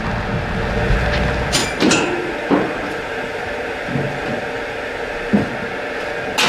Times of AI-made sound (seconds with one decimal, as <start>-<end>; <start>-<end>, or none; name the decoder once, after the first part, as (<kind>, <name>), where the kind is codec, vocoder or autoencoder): 1.6-5.5 (vocoder, BigVGAN v2)